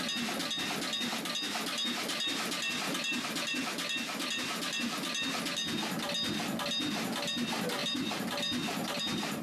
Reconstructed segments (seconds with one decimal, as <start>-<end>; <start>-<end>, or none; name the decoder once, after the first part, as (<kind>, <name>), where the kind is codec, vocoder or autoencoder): 3.1-4.3 (vocoder, BigVGAN v2); 7.8-9.0